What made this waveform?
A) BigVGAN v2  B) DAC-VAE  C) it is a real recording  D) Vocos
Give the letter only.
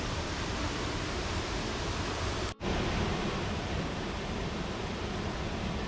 A